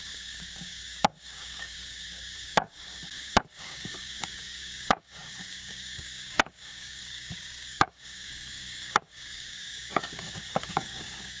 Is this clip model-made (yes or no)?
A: yes